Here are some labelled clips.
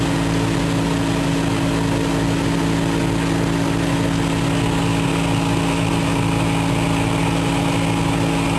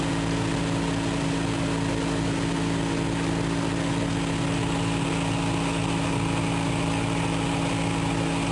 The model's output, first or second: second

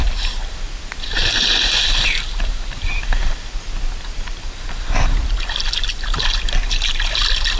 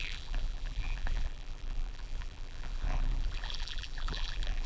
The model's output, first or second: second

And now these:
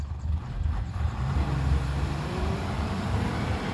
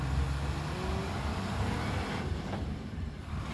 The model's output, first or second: first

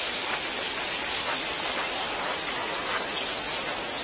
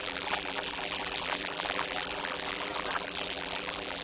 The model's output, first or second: second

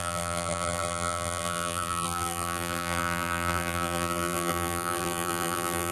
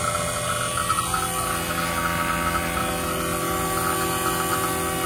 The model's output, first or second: first